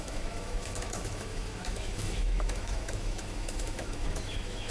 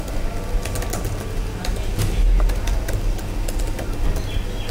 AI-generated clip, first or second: first